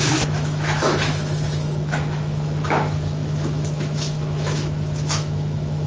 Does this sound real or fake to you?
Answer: fake